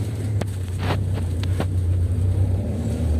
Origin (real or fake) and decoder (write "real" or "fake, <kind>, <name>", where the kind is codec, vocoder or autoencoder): fake, vocoder, BigVGAN v2